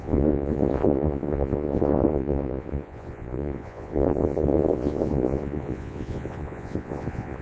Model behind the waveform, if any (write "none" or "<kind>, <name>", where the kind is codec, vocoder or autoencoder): vocoder, Vocos